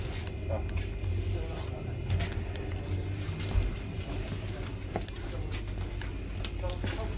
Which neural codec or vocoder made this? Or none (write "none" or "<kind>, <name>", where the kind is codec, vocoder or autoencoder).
none